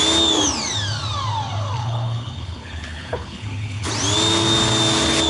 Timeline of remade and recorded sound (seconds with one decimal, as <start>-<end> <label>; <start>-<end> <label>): 0.0-1.8 recorded; 1.8-3.9 remade; 3.9-5.3 recorded